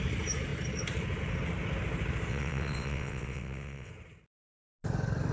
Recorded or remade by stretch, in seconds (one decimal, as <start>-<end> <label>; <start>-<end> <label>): 0.0-2.3 recorded; 2.3-3.9 remade; 3.9-5.3 recorded